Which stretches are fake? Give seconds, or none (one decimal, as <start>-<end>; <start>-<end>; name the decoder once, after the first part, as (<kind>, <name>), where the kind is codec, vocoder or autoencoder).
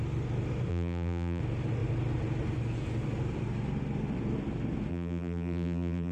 0.7-1.4 (vocoder, BigVGAN v2); 4.9-6.1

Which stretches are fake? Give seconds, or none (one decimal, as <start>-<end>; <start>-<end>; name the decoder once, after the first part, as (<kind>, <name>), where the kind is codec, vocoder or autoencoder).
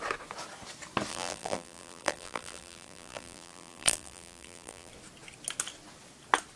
1.1-4.9 (vocoder, BigVGAN v2)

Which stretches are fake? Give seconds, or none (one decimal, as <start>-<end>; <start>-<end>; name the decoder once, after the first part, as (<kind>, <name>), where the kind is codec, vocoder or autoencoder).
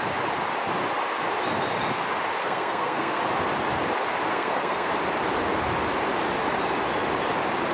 2.4-3.2 (codec, SNAC); 4.3-4.9